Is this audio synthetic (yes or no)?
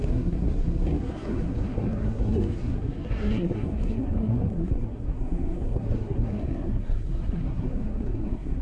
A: yes